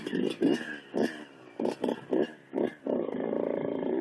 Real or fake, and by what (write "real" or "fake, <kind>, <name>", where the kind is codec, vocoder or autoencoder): fake, vocoder, BigVGAN v2